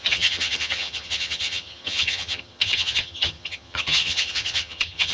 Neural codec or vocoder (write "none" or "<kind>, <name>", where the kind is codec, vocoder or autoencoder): vocoder, HiFi-GAN